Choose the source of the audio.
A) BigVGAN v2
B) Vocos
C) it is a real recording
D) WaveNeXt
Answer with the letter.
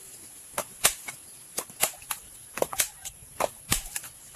A